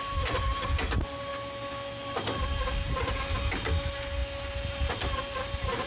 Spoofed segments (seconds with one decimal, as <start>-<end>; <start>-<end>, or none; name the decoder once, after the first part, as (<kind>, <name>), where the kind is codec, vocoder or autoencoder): none